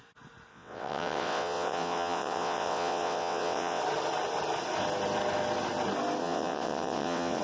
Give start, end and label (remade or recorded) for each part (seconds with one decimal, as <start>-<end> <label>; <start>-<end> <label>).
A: 0.0-0.5 recorded; 0.5-3.8 remade; 3.8-6.2 recorded; 6.2-7.4 remade